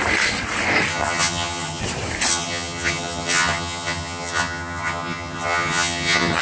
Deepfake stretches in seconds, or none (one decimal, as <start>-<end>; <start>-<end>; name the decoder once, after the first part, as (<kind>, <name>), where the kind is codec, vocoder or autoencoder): 0.9-1.8 (vocoder, HiFi-GAN); 2.3-6.4